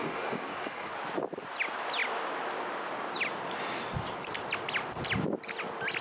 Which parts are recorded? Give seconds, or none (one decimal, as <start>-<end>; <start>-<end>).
0.9-6.0